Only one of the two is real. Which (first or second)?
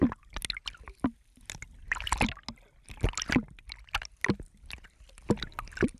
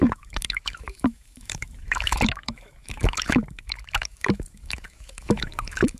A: first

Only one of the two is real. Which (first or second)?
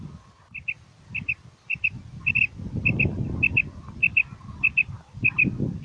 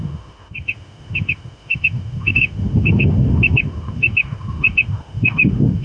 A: first